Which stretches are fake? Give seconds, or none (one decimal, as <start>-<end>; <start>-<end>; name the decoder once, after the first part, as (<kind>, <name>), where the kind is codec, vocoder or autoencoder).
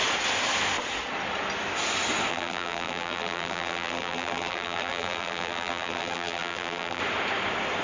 2.3-7.0 (vocoder, BigVGAN v2)